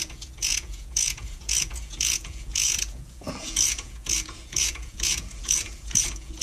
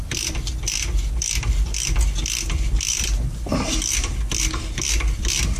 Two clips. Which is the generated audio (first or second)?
first